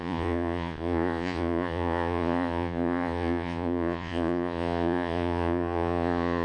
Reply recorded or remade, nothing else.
remade